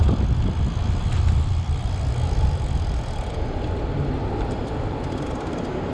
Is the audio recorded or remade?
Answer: recorded